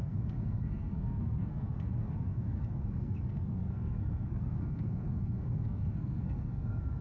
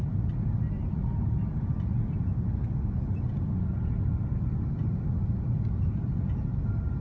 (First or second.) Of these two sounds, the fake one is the first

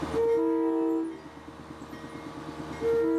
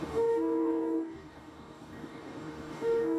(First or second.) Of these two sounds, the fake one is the second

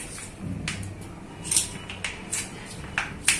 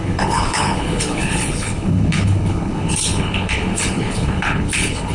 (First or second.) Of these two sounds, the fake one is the second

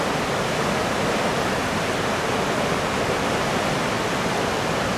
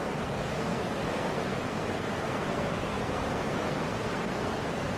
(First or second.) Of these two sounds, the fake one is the second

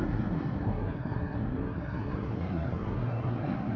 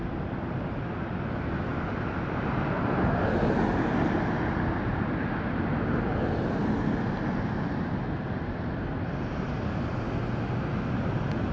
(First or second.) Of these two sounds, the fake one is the first